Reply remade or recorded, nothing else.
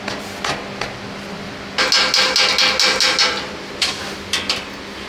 recorded